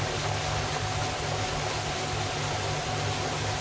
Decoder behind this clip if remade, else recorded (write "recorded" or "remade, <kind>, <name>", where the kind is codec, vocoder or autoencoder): recorded